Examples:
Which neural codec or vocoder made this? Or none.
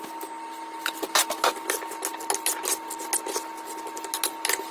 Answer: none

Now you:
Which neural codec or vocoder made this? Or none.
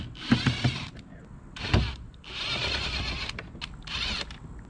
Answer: none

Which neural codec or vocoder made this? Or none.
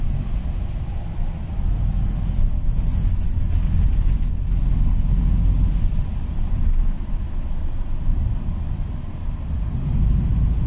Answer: none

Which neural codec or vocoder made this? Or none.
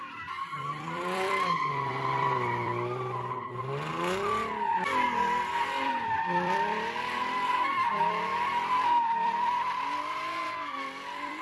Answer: vocoder, BigVGAN v2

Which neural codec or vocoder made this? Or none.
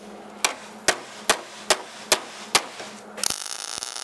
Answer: none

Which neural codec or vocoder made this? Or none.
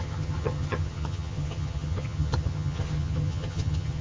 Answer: vocoder, HiFi-GAN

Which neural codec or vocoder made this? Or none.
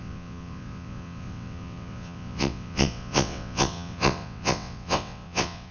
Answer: vocoder, WaveNeXt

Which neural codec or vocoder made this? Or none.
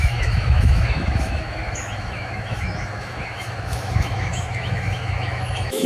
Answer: autoencoder, DAC-VAE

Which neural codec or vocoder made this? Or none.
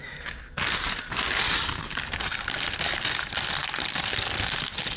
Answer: none